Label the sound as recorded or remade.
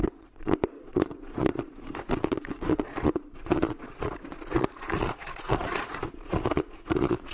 remade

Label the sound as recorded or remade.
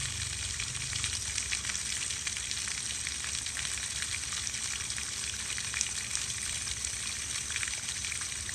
recorded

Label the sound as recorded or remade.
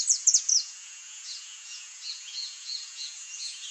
remade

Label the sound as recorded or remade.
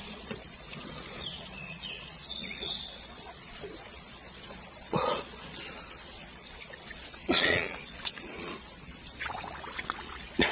remade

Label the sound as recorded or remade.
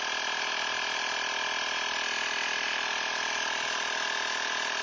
recorded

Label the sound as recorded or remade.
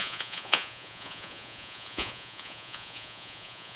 remade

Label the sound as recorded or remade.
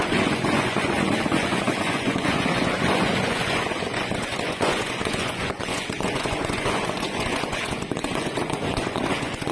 remade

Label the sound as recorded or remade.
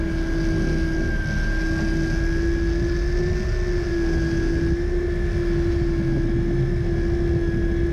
recorded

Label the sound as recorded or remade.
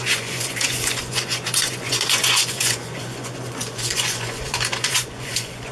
remade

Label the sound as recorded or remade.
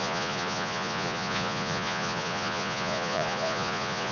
remade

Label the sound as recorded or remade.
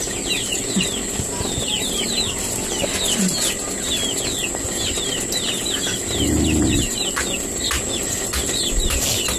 recorded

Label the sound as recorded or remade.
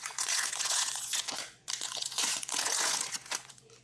remade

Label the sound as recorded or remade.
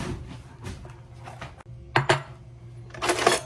recorded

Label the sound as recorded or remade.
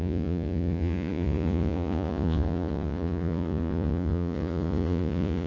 remade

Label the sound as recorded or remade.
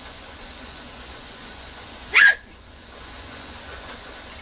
remade